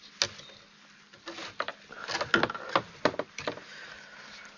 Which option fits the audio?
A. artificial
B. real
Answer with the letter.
B